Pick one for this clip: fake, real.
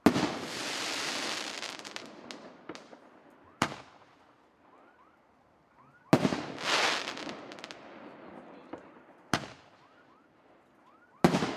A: real